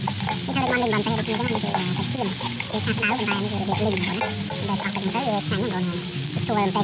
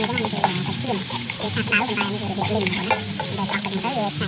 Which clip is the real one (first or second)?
first